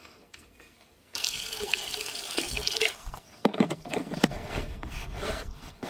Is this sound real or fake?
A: fake